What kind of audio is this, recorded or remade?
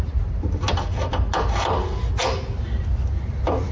recorded